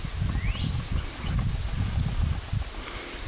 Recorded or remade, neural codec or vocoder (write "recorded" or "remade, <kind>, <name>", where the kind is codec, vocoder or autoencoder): recorded